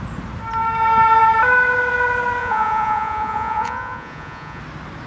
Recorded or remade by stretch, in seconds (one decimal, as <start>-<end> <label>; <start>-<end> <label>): 0.0-2.4 recorded; 2.4-4.6 remade; 4.6-5.1 recorded